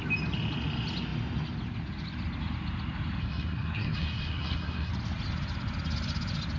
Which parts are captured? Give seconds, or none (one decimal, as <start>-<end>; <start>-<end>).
0.0-3.2; 4.9-6.6

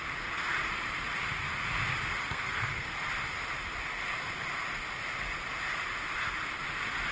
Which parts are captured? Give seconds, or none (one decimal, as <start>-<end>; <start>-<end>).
0.0-2.2; 2.9-7.1

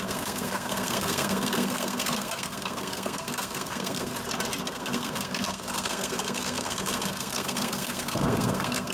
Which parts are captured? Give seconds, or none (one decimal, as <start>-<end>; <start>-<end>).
4.1-4.6

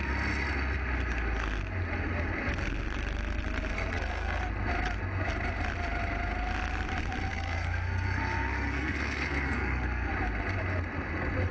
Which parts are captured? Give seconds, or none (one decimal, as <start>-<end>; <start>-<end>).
0.0-3.7; 4.4-7.3; 10.1-11.5

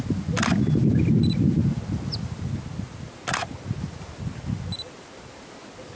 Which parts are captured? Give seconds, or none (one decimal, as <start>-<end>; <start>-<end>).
0.0-6.0

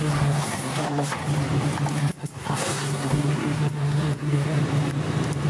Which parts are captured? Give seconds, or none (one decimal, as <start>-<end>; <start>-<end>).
1.2-1.9; 4.6-5.5

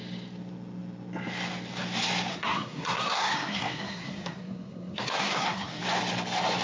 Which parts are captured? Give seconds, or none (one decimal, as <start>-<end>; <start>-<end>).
0.0-2.3; 5.8-6.6

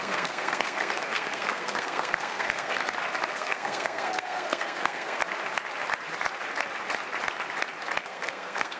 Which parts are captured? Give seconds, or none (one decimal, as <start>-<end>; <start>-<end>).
2.8-3.3; 5.2-8.0